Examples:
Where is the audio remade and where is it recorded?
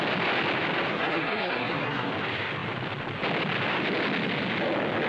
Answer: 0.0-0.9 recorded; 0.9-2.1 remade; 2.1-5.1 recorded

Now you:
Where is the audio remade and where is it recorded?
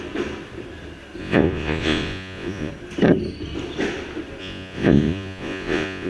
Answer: 0.0-1.2 recorded; 1.2-2.7 remade; 2.7-4.4 recorded; 4.4-6.1 remade